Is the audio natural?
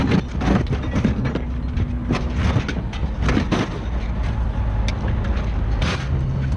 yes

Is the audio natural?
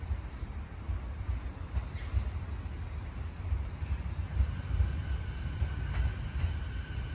yes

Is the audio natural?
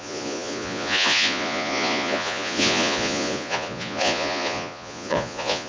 no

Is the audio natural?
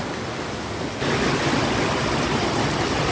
yes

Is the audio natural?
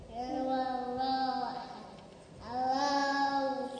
yes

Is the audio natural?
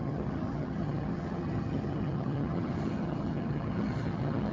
no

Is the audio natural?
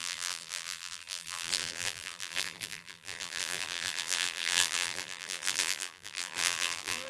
no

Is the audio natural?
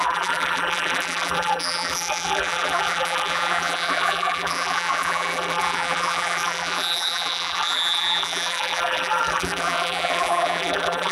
no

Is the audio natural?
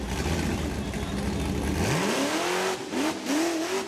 yes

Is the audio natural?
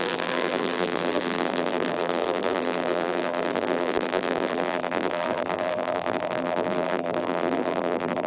no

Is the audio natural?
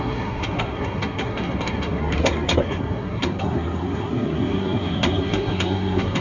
no